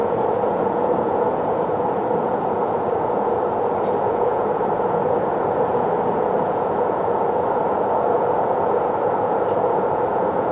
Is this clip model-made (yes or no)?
yes